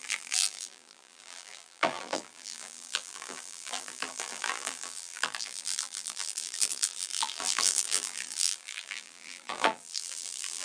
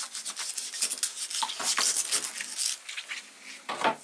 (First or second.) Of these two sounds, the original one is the second